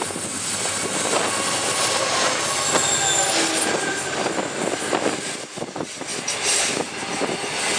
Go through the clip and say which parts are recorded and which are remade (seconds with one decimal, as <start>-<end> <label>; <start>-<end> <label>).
0.0-7.8 recorded